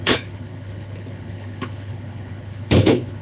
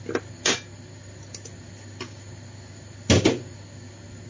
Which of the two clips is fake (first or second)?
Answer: first